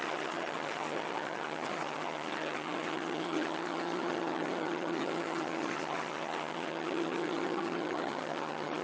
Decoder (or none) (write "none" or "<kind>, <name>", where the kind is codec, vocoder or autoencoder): vocoder, HiFi-GAN